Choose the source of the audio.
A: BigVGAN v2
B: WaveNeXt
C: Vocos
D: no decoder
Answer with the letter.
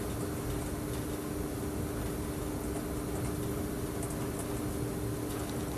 D